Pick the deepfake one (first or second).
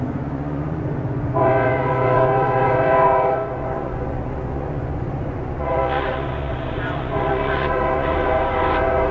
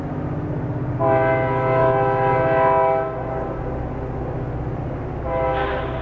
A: first